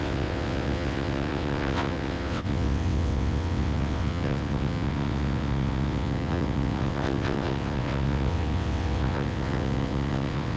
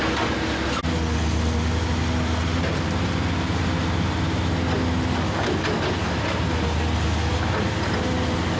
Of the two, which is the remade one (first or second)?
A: first